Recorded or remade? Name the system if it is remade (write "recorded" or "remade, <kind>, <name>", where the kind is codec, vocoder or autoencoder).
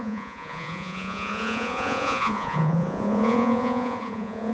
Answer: remade, vocoder, Vocos